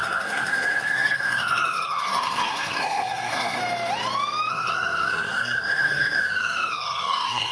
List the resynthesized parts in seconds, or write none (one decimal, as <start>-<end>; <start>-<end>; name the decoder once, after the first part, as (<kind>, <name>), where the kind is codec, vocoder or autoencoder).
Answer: 0.0-3.6 (codec, SNAC); 4.5-7.5